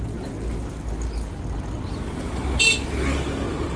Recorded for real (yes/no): yes